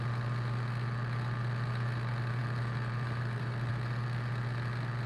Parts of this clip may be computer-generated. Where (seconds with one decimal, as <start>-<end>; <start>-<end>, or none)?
2.4-3.7